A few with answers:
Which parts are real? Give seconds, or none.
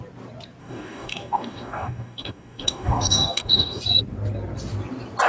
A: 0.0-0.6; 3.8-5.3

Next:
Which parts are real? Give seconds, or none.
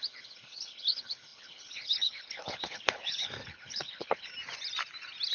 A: 4.3-5.3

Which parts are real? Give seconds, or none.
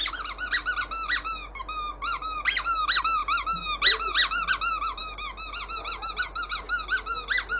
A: 0.0-7.6